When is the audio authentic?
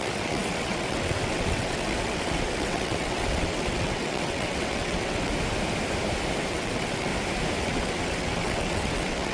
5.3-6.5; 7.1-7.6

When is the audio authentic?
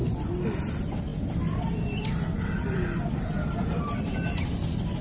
0.0-5.0